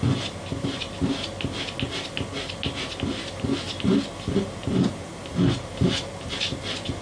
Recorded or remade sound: recorded